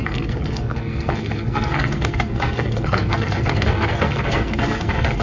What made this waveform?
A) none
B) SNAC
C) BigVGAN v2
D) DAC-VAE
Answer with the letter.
B